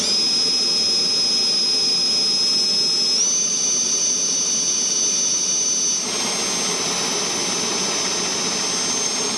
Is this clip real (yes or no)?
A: yes